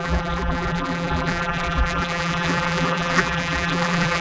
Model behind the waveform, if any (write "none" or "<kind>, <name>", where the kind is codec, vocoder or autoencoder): vocoder, BigVGAN v2